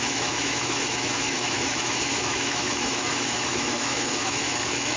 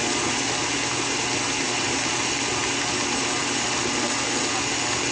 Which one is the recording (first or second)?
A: second